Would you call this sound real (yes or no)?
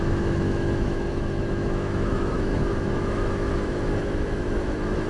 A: no